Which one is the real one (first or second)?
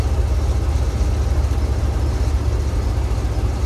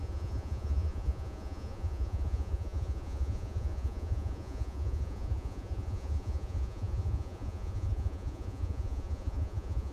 first